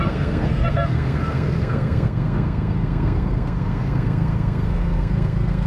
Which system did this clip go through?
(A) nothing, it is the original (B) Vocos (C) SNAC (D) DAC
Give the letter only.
C